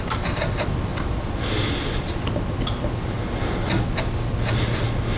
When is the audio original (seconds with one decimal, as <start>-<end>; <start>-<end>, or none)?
0.0-5.2